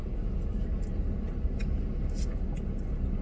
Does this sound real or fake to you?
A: real